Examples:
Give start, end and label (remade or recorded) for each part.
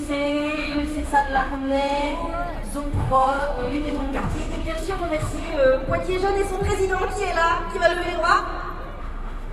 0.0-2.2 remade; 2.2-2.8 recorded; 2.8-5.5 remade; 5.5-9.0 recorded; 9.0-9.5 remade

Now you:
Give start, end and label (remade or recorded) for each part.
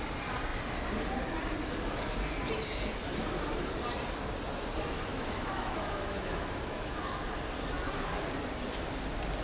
0.0-5.1 recorded; 5.1-7.0 remade; 7.0-9.4 recorded